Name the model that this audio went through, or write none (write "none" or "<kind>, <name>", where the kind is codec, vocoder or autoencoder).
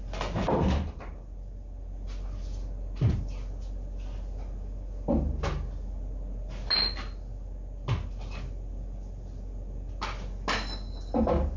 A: none